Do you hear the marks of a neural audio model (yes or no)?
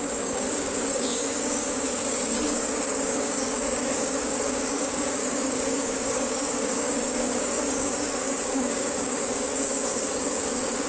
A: yes